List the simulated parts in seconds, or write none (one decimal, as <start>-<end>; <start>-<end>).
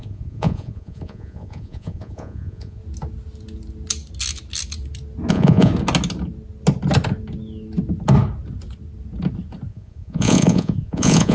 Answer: 0.0-2.8; 5.3-5.7; 9.7-11.3